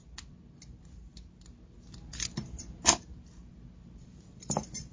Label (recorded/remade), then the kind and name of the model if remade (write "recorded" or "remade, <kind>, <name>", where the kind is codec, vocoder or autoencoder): recorded